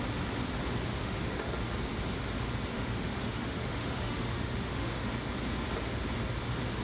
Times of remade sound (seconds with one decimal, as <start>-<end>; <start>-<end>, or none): 0.9-1.5; 2.7-5.1